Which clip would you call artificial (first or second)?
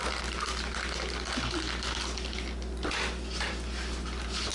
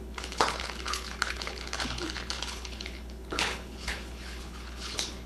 second